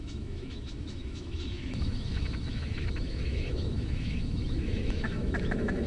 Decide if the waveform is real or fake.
fake